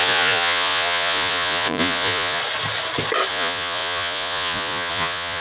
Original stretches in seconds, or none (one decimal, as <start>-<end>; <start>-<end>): 2.4-3.3